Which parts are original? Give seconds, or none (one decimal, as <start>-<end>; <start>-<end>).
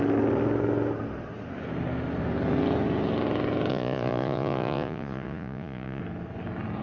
0.0-3.7; 6.0-6.8